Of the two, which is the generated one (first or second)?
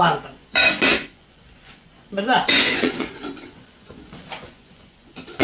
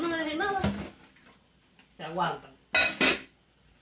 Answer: first